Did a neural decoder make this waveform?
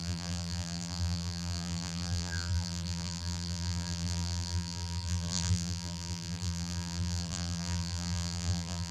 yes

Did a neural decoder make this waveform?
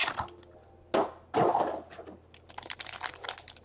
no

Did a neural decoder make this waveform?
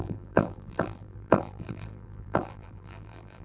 yes